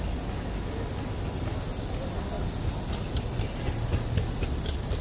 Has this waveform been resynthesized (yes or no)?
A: no